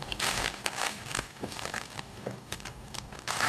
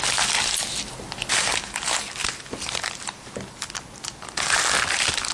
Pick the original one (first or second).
second